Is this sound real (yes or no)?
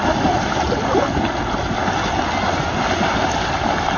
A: yes